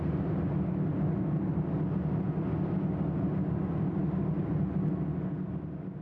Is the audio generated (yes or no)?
no